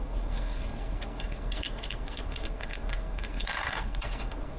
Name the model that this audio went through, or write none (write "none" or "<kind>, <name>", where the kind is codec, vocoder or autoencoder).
codec, SNAC